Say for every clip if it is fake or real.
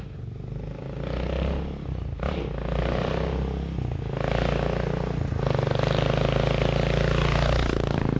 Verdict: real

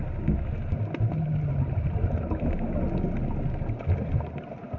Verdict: real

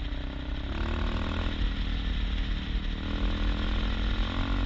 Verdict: real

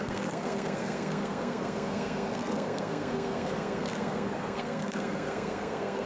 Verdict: fake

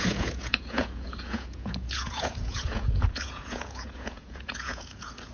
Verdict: fake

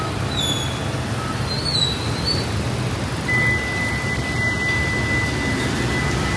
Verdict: real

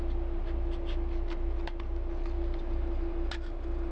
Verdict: real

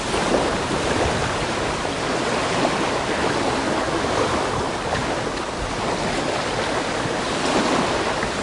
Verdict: real